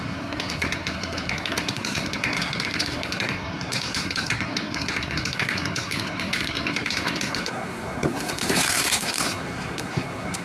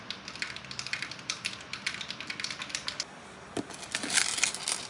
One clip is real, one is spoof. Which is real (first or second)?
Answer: second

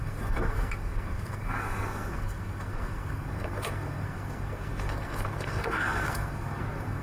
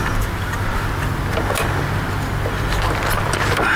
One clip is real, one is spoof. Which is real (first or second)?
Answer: second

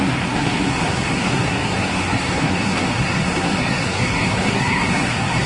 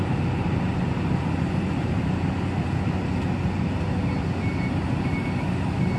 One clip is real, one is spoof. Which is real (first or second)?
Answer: second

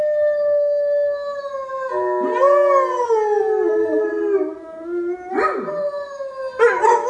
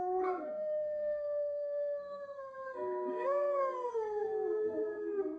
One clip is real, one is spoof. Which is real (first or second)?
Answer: first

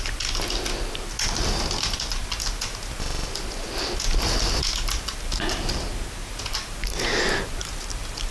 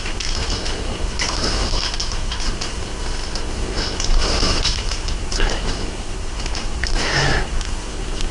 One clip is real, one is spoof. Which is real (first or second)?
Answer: first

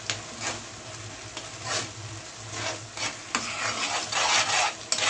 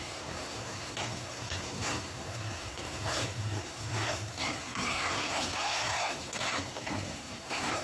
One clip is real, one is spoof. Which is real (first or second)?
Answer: first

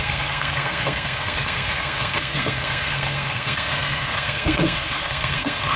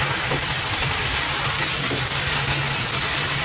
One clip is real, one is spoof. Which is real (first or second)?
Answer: second